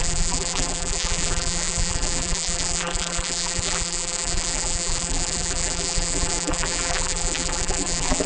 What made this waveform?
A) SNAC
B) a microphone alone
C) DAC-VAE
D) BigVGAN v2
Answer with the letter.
D